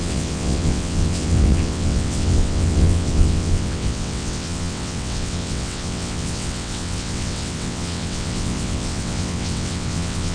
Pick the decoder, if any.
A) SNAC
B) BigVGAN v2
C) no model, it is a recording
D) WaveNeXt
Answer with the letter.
D